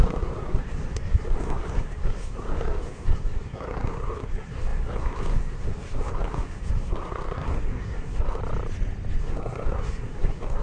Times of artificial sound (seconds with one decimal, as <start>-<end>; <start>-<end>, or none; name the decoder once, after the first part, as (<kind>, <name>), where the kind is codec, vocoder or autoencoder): 0.0-8.4 (codec, SNAC); 9.2-10.6